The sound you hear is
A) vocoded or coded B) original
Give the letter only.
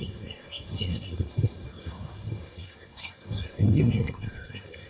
A